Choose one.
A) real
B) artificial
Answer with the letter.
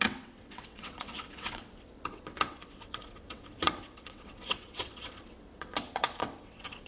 B